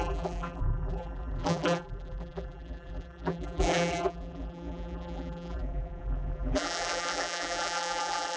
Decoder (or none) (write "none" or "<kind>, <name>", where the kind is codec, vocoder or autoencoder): vocoder, BigVGAN v2